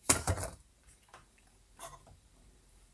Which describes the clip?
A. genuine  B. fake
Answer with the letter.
B